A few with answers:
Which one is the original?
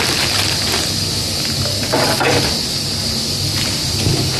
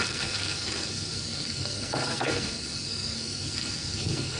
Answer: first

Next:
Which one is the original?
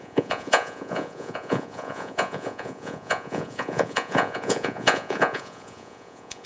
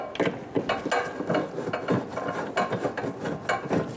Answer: second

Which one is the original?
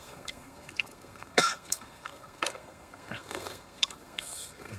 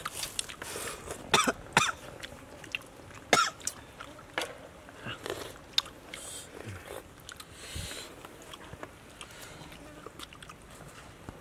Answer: second